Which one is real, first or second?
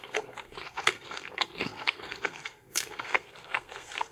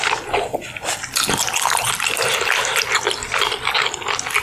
second